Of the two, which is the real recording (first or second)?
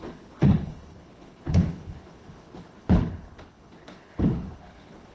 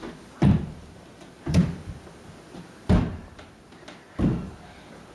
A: second